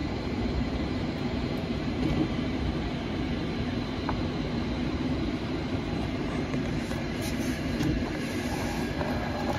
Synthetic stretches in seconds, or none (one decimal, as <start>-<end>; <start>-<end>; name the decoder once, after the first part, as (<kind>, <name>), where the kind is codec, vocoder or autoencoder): 0.0-2.9 (vocoder, BigVGAN v2); 3.7-7.2